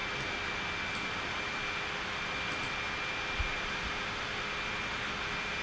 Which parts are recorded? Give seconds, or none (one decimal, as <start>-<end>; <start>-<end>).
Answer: 0.0-5.6